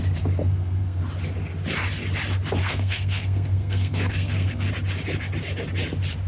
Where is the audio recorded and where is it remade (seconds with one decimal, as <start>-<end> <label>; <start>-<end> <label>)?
0.0-0.4 recorded; 0.4-1.0 remade; 1.0-2.6 recorded; 2.6-4.7 remade; 4.7-6.3 recorded